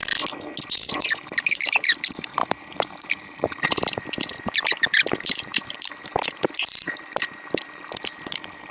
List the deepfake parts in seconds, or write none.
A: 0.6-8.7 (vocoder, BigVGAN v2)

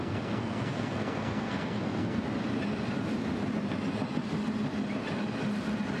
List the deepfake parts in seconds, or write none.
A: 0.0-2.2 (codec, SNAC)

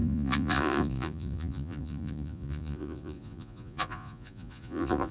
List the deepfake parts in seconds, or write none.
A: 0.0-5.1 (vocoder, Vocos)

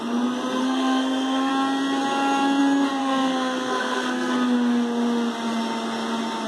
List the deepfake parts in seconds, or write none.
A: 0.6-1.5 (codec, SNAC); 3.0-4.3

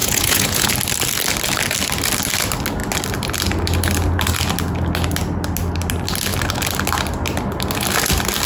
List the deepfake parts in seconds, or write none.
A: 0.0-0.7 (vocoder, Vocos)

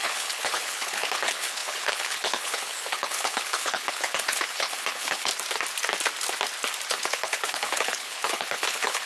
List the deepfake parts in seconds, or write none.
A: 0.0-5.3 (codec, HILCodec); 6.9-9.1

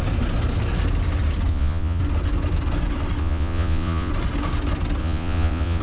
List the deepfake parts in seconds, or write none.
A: 1.5-2.0 (vocoder, Vocos); 3.2-4.1; 5.0-5.8

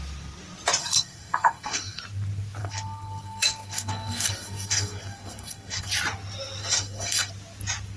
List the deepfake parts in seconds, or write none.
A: 0.8-2.0 (codec, SNAC); 2.6-5.9; 6.6-7.3